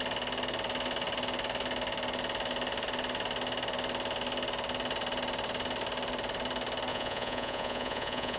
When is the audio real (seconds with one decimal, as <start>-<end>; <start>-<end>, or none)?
0.0-6.9